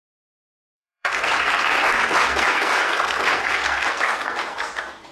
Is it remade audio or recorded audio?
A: remade